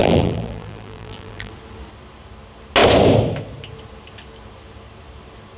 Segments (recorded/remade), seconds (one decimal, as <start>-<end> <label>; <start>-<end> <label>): 0.0-1.5 remade; 1.5-5.6 recorded